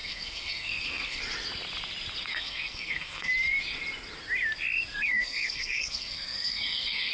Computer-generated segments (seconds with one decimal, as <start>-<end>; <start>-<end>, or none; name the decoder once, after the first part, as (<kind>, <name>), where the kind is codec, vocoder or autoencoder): 0.0-1.2 (codec, SNAC); 2.3-3.3; 4.9-7.1